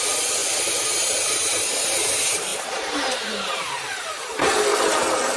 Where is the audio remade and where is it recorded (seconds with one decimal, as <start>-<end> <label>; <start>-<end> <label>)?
0.0-2.5 recorded; 2.5-3.7 remade; 3.7-5.4 recorded